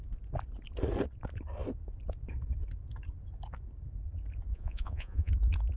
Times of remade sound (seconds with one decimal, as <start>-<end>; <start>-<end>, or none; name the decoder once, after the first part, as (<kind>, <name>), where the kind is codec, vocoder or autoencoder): 4.5-5.3 (vocoder, Vocos)